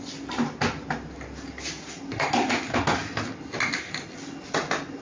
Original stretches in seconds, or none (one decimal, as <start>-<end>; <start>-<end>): 0.0-5.0